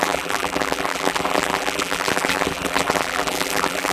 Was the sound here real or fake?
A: fake